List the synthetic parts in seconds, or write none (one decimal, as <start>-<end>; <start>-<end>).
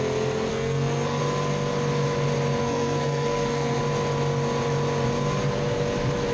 0.5-1.2; 2.6-3.8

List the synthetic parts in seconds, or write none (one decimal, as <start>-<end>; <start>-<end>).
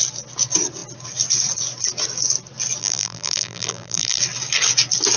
2.8-4.2